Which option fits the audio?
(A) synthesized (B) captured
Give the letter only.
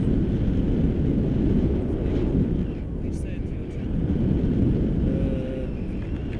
B